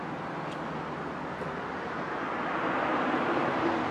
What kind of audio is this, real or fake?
real